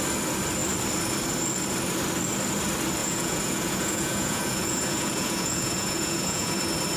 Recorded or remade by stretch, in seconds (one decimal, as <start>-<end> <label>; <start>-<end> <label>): 0.0-3.0 recorded; 3.0-6.6 remade; 6.6-7.0 recorded